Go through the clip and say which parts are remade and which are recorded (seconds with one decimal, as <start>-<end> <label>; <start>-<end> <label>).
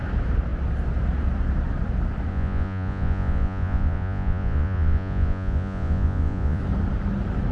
0.0-2.3 recorded; 2.3-6.6 remade; 6.6-7.5 recorded